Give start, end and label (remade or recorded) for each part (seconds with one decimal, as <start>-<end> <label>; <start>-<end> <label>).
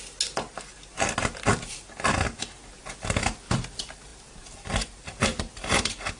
0.0-2.7 recorded; 2.7-6.2 remade